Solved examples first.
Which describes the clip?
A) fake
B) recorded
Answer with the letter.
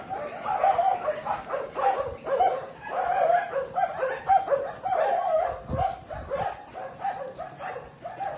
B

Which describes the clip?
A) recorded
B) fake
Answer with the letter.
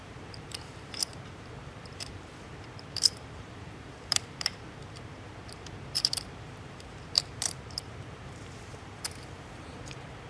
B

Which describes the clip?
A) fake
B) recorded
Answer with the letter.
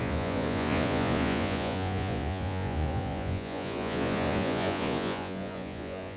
A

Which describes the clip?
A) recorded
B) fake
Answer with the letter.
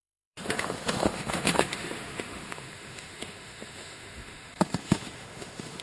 B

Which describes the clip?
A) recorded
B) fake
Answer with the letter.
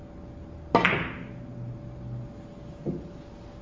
A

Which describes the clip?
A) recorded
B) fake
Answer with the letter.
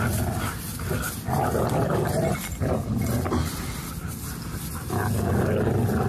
A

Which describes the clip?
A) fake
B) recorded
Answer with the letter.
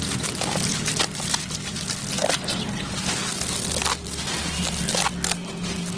B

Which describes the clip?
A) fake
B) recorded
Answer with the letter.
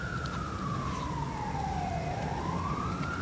B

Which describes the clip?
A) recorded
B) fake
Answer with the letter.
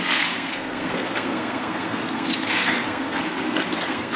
B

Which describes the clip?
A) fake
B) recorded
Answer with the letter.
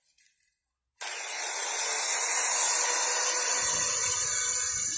B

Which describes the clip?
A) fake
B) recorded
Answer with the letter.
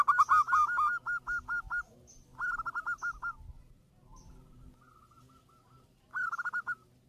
B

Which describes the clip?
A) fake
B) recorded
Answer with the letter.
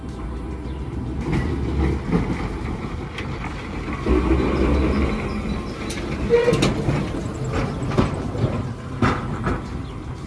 B